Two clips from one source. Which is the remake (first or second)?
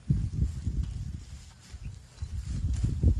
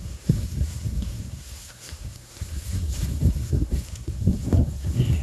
second